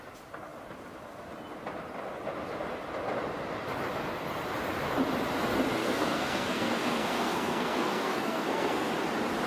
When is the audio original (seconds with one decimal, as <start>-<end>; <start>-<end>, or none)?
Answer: 0.0-5.8; 8.9-9.5

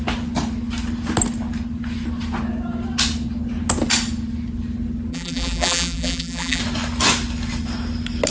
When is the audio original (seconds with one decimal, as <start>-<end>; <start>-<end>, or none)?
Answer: 0.0-5.1; 6.6-8.3

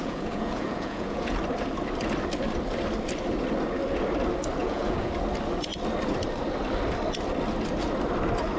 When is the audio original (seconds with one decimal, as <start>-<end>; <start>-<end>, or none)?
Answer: 1.4-4.6; 5.1-8.6

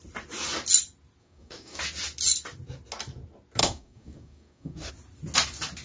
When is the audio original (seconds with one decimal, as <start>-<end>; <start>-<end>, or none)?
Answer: 0.0-1.2; 1.8-3.6; 4.9-5.8

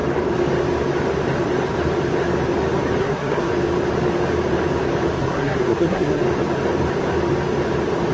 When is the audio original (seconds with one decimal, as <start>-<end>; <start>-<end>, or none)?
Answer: 0.0-3.0; 3.5-5.2; 6.2-8.1

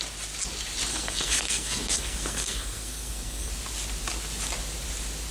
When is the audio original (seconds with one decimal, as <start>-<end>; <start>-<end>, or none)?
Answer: 0.0-0.9; 3.5-5.3

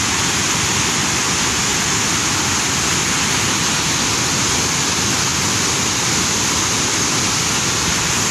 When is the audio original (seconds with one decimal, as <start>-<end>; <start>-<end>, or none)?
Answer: 0.0-8.3

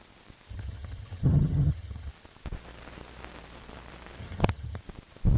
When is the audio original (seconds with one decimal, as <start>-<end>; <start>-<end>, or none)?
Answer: 0.0-0.5; 2.1-4.2; 4.8-5.4